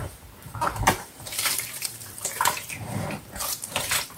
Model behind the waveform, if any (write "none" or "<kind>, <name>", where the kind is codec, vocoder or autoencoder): vocoder, BigVGAN v2